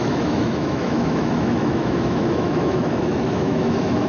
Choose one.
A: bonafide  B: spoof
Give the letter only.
B